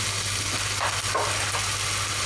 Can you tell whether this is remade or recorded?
recorded